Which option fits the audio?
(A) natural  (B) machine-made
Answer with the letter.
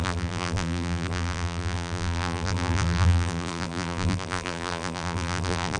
B